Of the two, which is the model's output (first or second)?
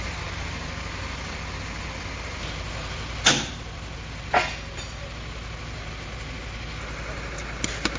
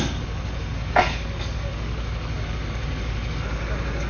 second